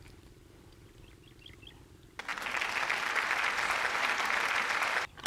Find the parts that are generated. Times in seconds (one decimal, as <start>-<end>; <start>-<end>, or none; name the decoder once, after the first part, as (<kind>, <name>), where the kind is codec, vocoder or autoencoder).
none

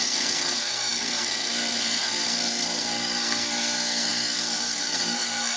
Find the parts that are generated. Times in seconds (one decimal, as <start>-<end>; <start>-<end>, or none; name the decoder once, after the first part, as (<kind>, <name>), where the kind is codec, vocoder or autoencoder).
0.0-5.6 (codec, SNAC)

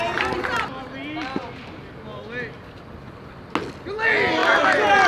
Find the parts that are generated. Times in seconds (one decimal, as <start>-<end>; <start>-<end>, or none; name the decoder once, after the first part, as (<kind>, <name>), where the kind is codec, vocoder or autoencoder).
none

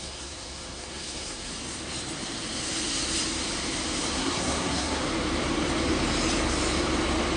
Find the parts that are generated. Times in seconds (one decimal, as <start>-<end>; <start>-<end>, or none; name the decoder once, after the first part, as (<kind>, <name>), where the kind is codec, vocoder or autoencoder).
0.0-1.5 (codec, SNAC); 4.1-5.0

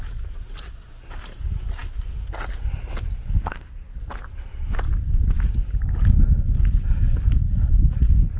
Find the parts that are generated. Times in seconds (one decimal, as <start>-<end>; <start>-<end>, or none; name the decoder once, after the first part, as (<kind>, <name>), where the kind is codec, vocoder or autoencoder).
3.4-4.0 (codec, SNAC)

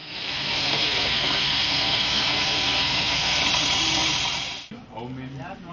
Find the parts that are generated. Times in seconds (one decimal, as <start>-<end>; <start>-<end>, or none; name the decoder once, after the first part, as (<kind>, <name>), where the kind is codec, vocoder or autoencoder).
0.0-3.4 (codec, SNAC)

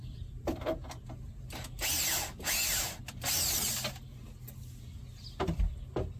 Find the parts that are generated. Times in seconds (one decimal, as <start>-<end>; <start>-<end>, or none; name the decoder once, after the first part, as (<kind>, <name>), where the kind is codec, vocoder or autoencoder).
none

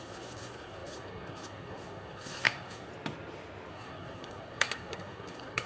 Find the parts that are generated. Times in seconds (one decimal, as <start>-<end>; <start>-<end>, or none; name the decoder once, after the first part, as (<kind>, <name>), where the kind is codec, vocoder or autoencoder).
0.0-2.9 (codec, SNAC); 3.7-5.7